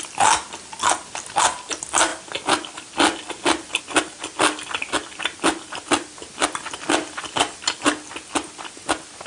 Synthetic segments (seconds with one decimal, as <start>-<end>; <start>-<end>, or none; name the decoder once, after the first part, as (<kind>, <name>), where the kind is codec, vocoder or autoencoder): none